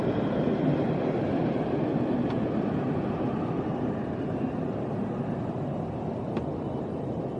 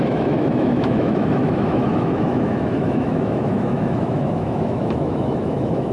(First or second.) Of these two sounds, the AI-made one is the second